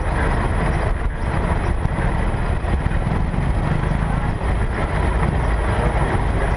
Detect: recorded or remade recorded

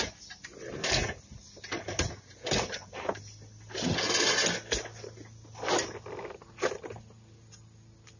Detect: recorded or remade recorded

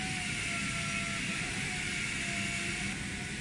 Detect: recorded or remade recorded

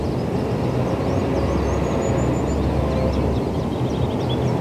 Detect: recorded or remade recorded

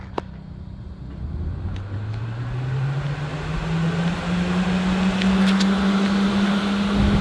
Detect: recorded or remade recorded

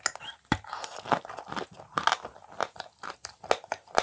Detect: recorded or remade recorded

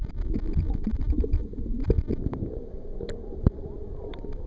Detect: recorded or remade remade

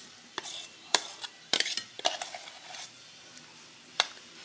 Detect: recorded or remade remade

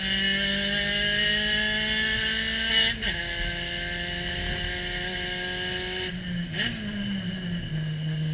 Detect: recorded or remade recorded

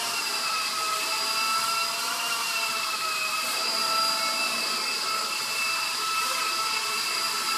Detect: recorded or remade remade